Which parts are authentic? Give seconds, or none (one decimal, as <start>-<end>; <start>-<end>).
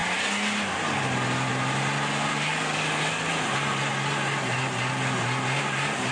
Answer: 0.0-2.3; 3.3-6.1